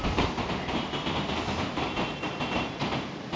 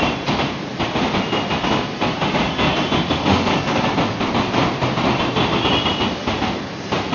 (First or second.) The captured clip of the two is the first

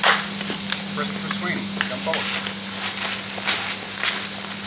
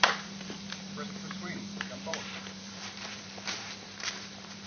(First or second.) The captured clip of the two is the first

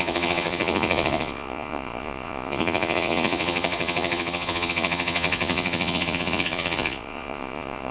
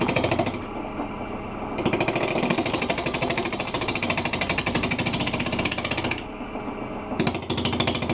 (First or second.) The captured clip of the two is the second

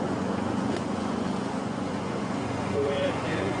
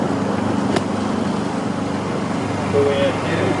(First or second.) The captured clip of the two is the second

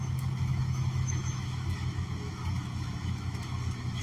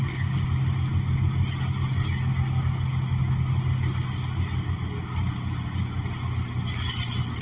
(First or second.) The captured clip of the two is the second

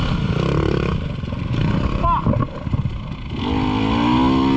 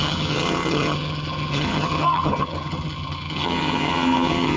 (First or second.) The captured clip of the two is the first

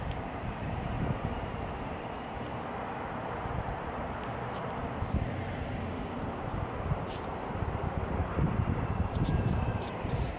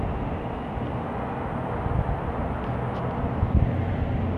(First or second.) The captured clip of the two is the second